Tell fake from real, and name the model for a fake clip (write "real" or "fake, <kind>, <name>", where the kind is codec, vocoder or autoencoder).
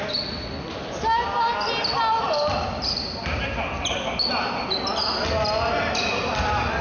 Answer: real